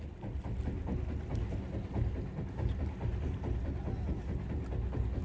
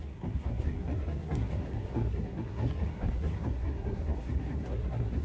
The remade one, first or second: second